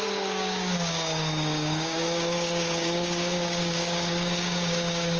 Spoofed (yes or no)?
yes